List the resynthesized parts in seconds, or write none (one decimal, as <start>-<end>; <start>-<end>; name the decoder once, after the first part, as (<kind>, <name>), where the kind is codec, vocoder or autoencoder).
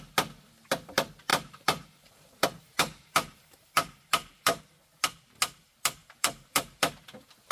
1.3-4.6 (vocoder, BigVGAN v2); 6.0-6.9